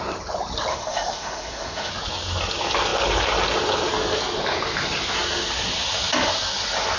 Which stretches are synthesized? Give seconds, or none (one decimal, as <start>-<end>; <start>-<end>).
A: 0.7-1.9